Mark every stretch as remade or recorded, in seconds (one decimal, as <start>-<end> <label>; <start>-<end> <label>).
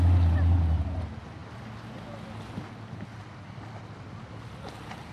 0.0-5.1 recorded